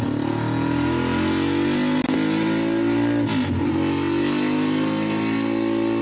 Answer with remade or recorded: recorded